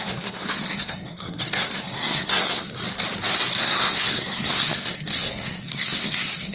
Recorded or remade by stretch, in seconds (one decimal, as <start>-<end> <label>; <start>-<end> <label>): 0.0-2.8 remade; 2.8-3.6 recorded; 3.6-6.5 remade